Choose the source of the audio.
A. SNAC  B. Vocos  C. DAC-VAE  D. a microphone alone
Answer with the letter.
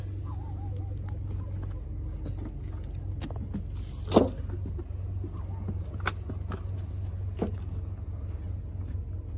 D